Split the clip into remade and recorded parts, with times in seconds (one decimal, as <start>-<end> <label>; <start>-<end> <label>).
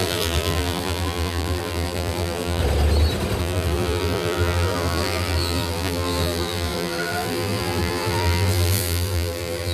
0.0-2.6 remade; 2.6-3.4 recorded; 3.4-9.7 remade